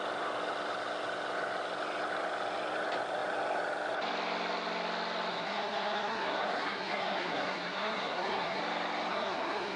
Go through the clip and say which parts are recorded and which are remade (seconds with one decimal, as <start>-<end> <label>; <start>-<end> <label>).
0.0-5.3 recorded; 5.3-8.6 remade; 8.6-9.1 recorded; 9.1-9.8 remade